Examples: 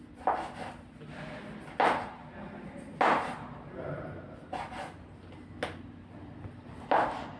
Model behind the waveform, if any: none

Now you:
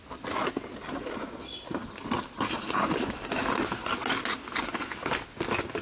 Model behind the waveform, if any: none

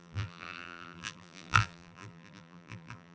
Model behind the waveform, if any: vocoder, BigVGAN v2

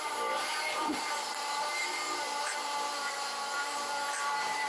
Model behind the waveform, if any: vocoder, BigVGAN v2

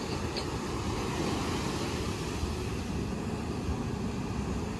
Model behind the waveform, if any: none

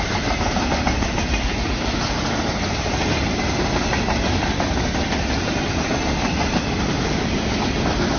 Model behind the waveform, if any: none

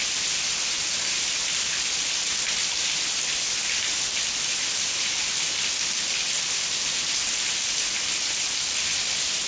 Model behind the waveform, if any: none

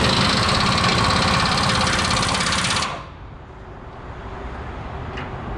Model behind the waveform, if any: none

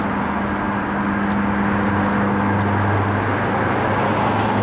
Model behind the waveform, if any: none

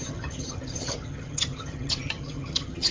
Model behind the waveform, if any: vocoder, HiFi-GAN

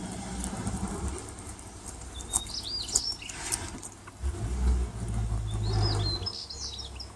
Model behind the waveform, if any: none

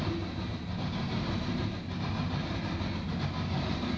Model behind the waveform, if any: none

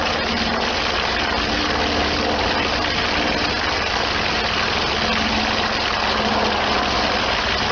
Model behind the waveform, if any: none